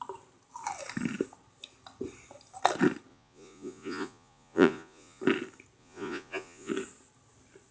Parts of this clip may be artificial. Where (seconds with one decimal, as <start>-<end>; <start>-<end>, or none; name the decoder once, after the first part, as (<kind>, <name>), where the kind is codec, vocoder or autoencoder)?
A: 3.1-5.2 (vocoder, Vocos); 5.8-6.7